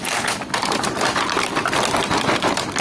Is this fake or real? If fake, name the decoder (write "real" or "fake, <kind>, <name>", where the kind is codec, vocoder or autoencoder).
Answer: real